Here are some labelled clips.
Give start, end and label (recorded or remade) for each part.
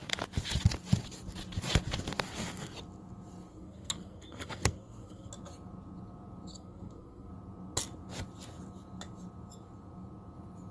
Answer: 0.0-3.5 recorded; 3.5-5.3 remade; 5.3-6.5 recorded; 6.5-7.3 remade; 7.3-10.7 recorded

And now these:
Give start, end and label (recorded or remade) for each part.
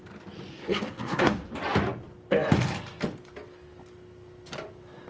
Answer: 0.0-0.5 recorded; 0.5-1.5 remade; 1.5-5.1 recorded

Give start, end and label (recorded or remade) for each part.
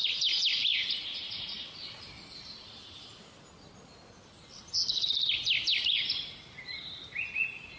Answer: 0.0-7.8 recorded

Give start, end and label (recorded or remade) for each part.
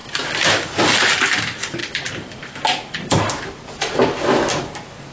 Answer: 0.0-5.1 recorded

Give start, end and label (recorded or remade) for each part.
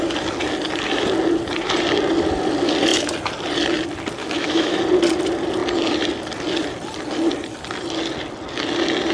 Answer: 0.0-4.2 recorded; 4.2-4.8 remade; 4.8-9.1 recorded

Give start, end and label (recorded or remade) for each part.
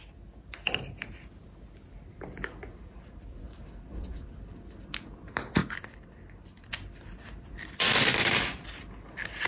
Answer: 0.0-5.6 recorded; 5.6-6.7 remade; 6.7-9.5 recorded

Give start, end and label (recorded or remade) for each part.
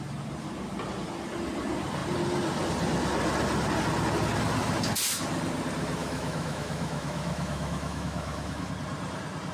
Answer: 0.0-6.0 recorded; 6.0-8.7 remade; 8.7-9.5 recorded